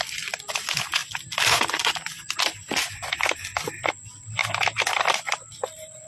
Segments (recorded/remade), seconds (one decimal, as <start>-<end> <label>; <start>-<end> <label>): 0.0-1.0 remade; 1.0-3.2 recorded; 3.2-4.4 remade; 4.4-4.9 recorded; 4.9-6.1 remade